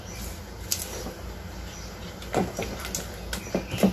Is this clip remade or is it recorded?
recorded